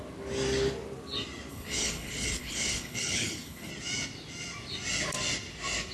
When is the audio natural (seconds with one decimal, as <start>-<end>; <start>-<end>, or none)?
0.0-1.5; 3.7-5.9